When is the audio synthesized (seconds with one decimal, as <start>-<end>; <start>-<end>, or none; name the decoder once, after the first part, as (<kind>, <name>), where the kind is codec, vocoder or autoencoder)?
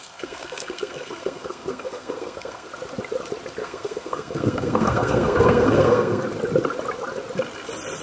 0.0-2.7 (codec, SNAC); 3.6-6.2